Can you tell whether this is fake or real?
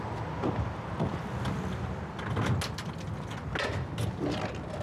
real